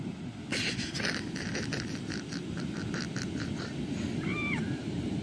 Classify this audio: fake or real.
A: real